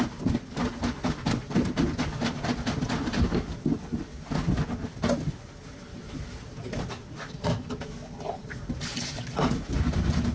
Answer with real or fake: real